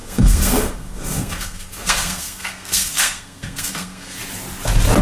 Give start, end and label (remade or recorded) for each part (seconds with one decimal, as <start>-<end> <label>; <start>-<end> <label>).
0.0-4.2 remade; 4.2-5.0 recorded

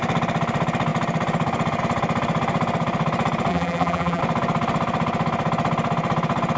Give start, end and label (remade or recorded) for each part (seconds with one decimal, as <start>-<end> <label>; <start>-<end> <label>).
0.0-3.5 recorded; 3.5-4.2 remade; 4.2-6.6 recorded